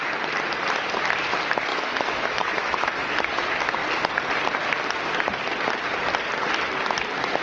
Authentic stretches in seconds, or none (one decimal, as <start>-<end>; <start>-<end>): 0.0-1.7; 3.0-7.4